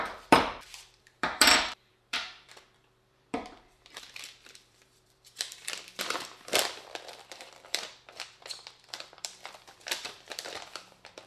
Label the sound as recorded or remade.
remade